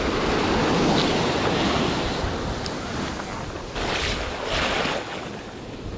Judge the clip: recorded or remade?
recorded